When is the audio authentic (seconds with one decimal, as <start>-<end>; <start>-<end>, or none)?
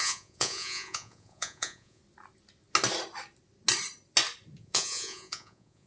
2.0-4.6